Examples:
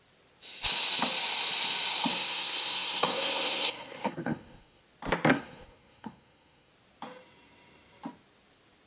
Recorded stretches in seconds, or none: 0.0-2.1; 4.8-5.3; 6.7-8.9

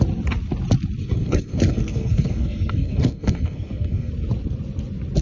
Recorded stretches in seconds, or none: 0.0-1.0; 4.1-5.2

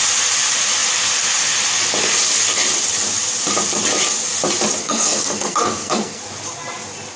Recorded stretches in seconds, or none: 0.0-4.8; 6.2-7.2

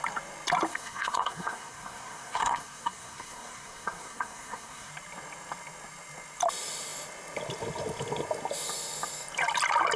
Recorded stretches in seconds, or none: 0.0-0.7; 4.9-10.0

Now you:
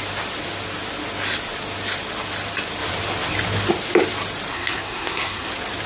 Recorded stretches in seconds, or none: 0.0-4.5; 5.5-5.9